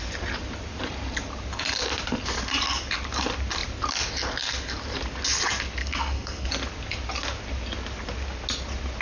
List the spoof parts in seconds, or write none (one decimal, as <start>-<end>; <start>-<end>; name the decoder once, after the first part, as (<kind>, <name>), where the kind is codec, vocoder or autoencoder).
5.8-6.5 (codec, SNAC)